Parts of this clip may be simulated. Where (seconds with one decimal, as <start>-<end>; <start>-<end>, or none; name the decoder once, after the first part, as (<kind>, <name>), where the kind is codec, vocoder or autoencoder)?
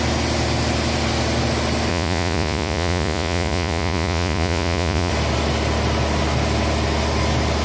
1.9-5.1 (vocoder, Vocos)